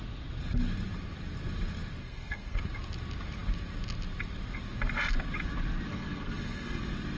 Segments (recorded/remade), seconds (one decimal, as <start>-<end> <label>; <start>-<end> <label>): 0.0-2.0 recorded; 2.0-2.6 remade; 2.6-5.9 recorded; 5.9-6.8 remade; 6.8-7.2 recorded